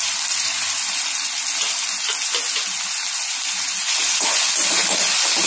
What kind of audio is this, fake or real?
real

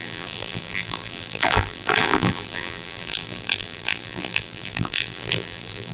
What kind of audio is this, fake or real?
fake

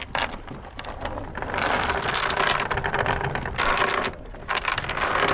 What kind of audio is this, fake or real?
real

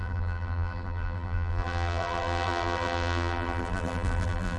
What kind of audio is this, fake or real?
fake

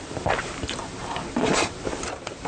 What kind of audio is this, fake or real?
fake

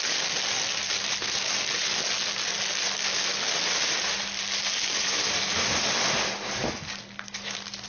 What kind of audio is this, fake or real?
real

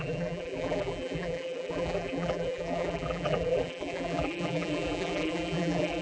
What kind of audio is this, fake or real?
fake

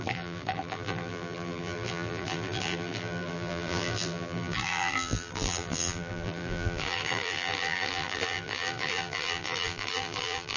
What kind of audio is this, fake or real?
fake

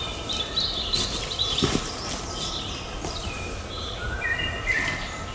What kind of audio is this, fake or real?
real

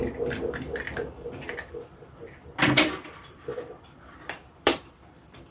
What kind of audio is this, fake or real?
fake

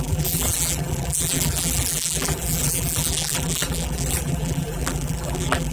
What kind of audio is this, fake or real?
fake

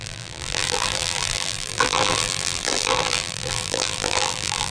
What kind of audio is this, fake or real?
fake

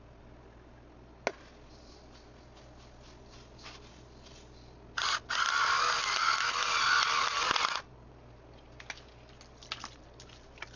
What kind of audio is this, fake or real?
real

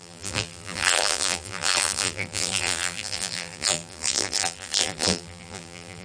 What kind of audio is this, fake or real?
fake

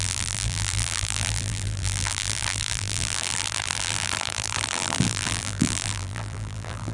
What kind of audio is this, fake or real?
fake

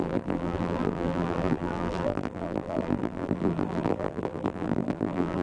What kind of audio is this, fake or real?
fake